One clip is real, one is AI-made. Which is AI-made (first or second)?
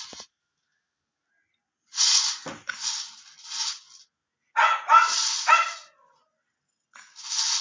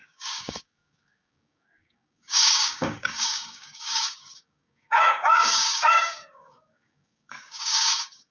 second